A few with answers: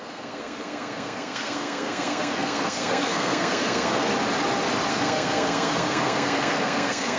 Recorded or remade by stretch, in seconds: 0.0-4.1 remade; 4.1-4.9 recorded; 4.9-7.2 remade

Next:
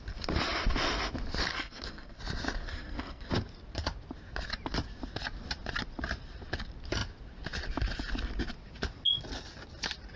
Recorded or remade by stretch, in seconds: 0.0-1.5 recorded; 1.5-2.2 remade; 2.2-2.6 recorded; 2.6-3.3 remade; 3.3-10.2 recorded